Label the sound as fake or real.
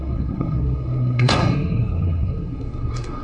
fake